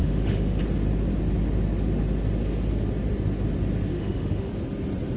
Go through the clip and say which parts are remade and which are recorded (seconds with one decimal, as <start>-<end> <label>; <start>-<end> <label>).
0.0-0.6 remade; 0.6-3.9 recorded; 3.9-4.5 remade; 4.5-5.2 recorded